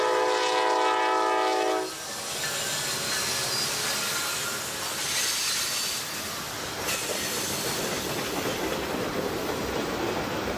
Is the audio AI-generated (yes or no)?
no